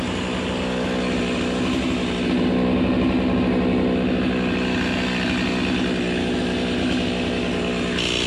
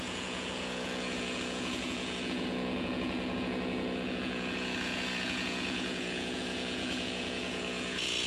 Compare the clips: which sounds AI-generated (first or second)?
second